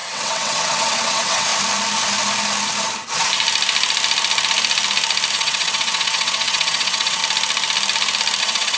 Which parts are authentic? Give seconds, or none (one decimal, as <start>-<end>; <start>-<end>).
1.5-5.3; 7.2-8.4

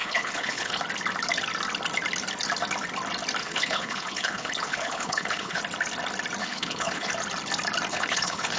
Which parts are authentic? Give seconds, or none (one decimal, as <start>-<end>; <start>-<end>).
0.8-3.4; 5.6-6.4; 7.1-7.9

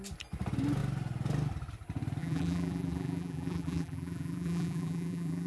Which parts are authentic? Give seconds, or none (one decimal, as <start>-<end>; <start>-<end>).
0.0-2.2

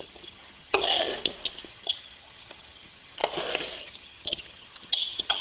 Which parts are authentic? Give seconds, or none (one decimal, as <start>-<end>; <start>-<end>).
1.1-1.7; 3.2-3.8

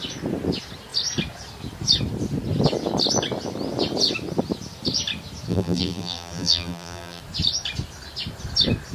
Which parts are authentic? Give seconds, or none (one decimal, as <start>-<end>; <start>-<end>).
0.0-5.5; 7.2-8.9

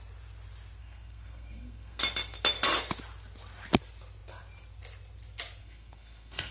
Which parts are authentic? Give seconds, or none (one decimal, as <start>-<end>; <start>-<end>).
0.0-0.8; 2.0-5.6